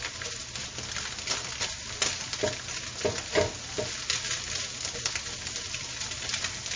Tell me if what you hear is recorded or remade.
recorded